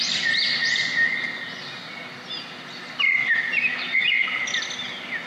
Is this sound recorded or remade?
recorded